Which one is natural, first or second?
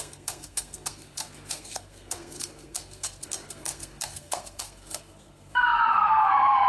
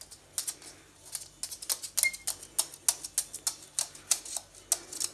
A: second